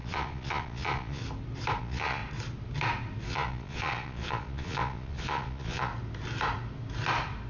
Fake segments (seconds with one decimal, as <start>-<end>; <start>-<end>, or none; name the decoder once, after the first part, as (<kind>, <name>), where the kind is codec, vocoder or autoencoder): 0.0-1.2 (vocoder, Vocos); 1.8-2.2; 3.3-5.9